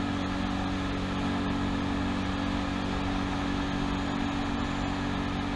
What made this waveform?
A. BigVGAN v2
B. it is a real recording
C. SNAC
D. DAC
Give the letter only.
B